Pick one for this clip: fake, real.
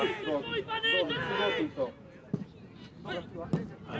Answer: real